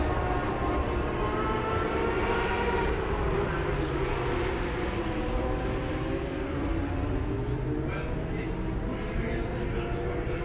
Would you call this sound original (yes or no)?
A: yes